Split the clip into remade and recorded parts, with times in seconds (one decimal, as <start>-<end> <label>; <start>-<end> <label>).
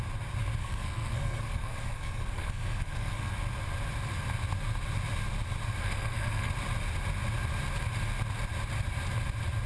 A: 0.0-0.6 recorded; 0.6-3.3 remade; 3.3-5.8 recorded; 5.8-6.5 remade; 6.5-9.7 recorded